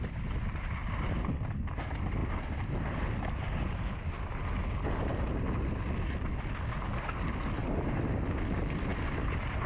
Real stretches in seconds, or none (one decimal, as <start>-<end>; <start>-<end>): 0.0-9.7

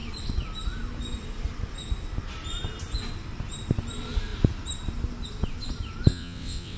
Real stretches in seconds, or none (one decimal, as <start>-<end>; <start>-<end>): 0.0-6.1

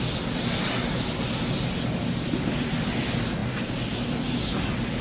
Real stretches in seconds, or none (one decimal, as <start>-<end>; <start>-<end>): 0.0-5.0

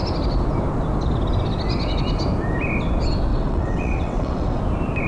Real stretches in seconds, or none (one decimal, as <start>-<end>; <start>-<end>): 0.0-3.3; 4.6-5.1